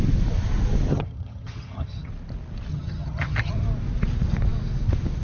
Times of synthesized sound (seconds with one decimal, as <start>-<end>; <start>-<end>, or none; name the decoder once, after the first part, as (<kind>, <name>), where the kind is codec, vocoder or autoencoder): 0.9-2.1 (vocoder, HiFi-GAN); 2.7-3.5